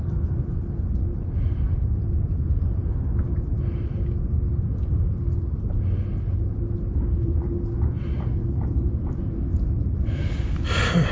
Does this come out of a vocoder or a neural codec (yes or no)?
no